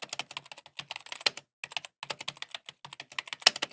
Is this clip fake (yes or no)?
no